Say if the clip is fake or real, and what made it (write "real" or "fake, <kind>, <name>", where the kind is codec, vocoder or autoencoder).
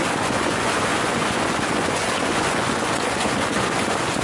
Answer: fake, vocoder, Vocos